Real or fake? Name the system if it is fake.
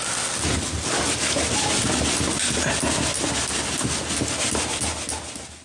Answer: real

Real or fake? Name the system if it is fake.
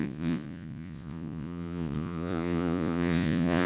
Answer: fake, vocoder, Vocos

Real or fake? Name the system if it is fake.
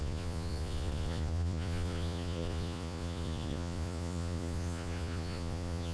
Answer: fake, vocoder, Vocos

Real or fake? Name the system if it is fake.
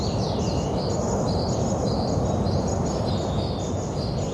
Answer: real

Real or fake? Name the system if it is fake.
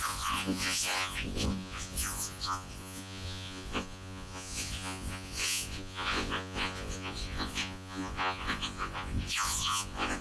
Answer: fake, vocoder, Vocos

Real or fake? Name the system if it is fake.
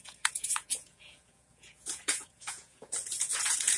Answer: fake, vocoder, Vocos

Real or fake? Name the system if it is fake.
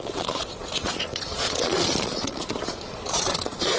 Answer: fake, vocoder, Vocos